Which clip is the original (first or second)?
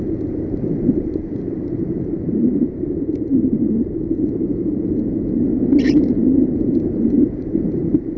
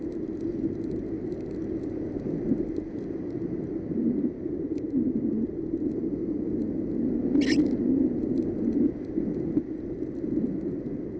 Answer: second